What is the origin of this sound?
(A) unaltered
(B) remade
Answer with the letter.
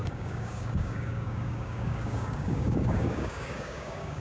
B